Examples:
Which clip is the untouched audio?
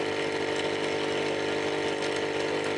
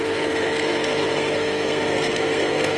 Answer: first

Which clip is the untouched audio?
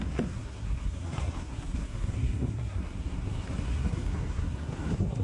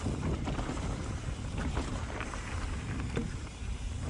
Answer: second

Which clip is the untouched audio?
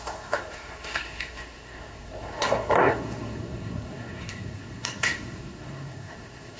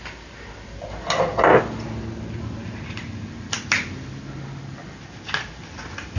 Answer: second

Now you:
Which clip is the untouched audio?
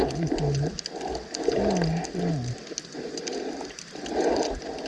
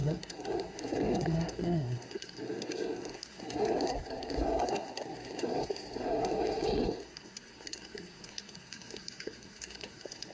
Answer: first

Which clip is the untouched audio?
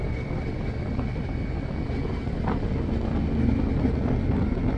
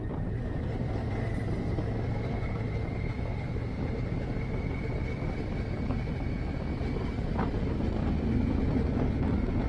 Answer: first